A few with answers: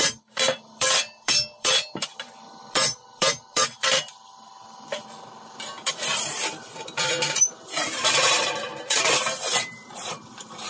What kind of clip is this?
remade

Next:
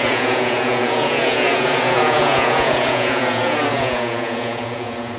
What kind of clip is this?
remade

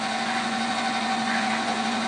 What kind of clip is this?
remade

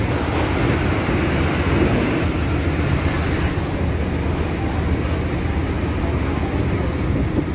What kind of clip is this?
recorded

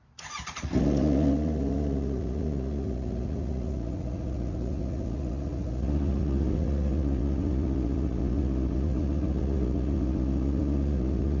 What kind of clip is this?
remade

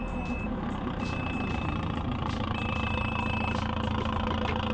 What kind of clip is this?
recorded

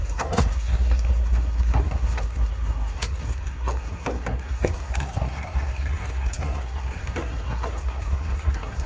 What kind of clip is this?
remade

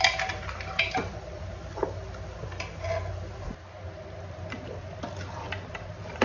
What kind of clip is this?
recorded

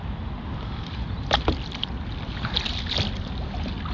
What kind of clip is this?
recorded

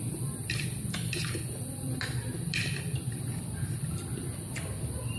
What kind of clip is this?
remade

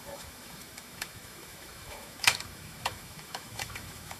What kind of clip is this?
remade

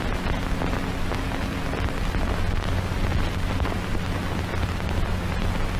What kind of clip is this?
recorded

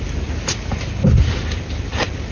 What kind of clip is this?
recorded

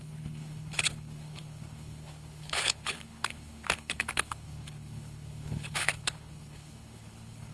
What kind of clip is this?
remade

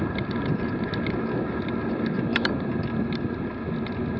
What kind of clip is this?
recorded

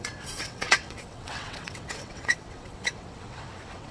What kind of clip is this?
remade